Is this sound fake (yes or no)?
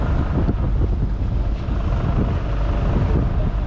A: no